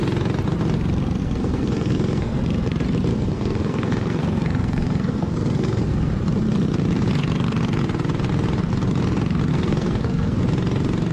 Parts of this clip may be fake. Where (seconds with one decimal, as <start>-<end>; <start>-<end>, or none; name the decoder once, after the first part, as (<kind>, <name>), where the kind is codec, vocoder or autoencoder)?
1.2-2.4 (codec, SNAC); 3.1-6.1; 9.5-10.4